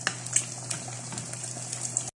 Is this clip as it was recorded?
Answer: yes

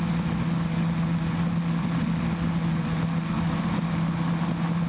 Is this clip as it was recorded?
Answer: yes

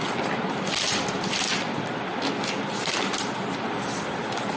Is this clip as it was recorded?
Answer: yes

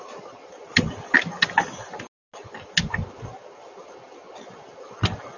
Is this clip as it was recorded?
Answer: yes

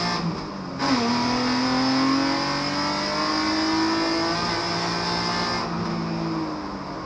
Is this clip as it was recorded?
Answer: yes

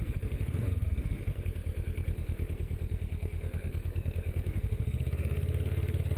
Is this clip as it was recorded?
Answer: no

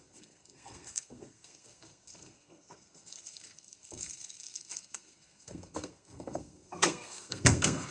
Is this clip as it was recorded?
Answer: no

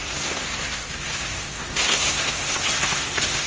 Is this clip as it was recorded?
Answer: no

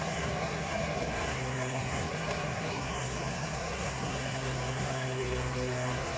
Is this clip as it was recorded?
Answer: no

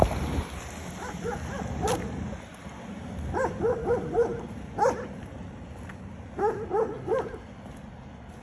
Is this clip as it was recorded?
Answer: yes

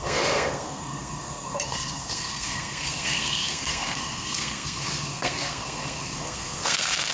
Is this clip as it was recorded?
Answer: no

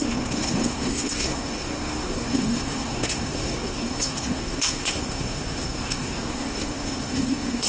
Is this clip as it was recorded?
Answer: no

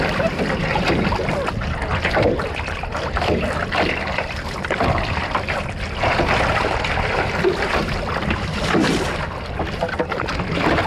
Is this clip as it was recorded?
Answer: yes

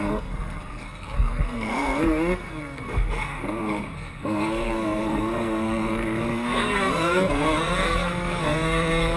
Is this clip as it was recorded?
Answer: no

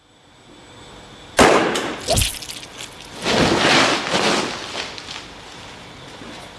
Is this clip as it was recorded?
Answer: yes